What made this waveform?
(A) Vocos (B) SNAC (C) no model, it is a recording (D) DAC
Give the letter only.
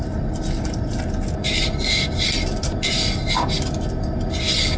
C